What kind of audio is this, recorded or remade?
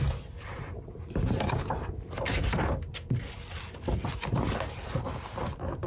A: recorded